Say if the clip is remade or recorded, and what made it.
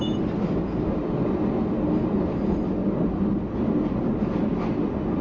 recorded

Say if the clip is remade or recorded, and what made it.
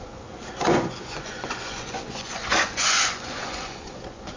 remade, vocoder, Vocos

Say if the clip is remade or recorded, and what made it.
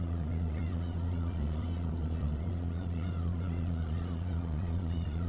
remade, vocoder, Vocos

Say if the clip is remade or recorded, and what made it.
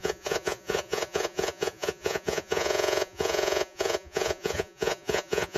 remade, vocoder, Vocos